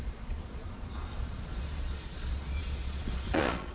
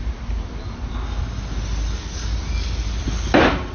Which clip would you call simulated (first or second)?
first